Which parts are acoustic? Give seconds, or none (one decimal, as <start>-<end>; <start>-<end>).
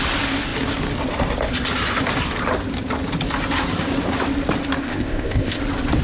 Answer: 0.0-4.8; 5.6-6.0